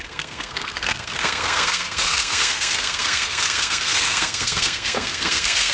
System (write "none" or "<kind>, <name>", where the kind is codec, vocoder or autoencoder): codec, SNAC